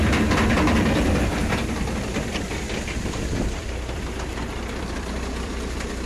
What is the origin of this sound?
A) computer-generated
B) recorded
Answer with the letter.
A